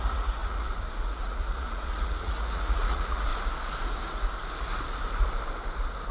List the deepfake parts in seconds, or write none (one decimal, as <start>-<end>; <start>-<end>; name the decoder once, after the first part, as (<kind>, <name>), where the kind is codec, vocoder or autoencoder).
0.0-3.3 (vocoder, Vocos)